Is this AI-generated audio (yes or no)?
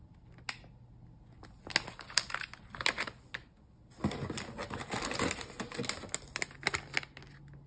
no